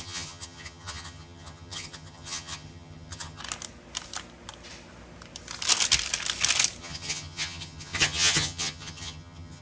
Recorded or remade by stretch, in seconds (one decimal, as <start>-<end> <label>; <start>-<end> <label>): 0.0-3.4 remade; 3.4-6.8 recorded; 6.8-9.6 remade